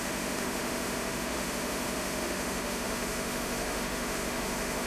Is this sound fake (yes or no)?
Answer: yes